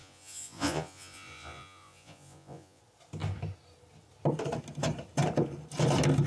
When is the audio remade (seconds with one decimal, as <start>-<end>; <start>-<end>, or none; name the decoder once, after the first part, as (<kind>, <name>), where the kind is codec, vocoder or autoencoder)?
0.0-2.8 (vocoder, Vocos)